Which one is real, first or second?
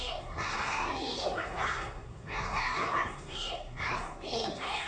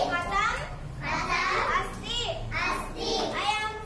second